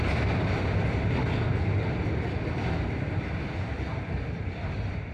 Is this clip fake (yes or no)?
no